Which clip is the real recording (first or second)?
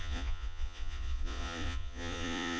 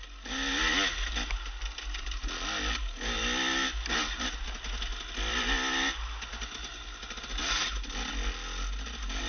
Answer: second